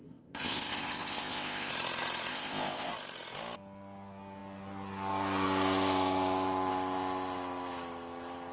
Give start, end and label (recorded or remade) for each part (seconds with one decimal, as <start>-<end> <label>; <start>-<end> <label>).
0.0-1.7 remade; 1.7-2.3 recorded; 2.3-2.9 remade; 2.9-8.5 recorded